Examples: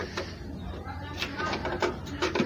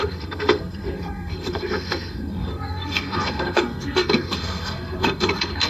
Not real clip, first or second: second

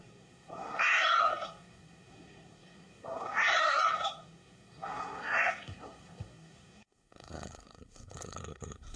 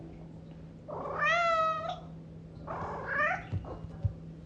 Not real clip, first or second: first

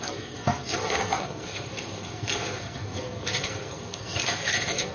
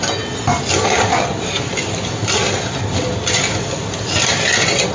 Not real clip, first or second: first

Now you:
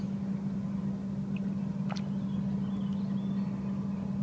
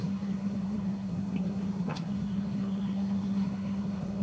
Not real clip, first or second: second